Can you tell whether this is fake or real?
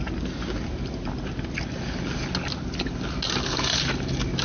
real